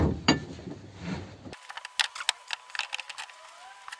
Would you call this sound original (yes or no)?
yes